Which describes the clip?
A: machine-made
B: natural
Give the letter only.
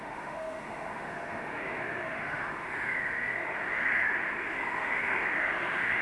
A